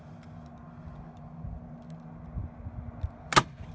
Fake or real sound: real